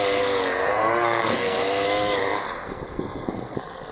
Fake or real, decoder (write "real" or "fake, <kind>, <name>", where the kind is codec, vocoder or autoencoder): fake, codec, SNAC